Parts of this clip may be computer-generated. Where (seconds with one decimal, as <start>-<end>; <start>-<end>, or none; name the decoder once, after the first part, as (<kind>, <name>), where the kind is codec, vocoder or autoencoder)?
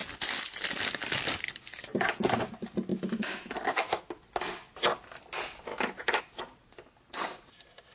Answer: 2.9-4.0 (autoencoder, DAC-VAE); 5.7-6.2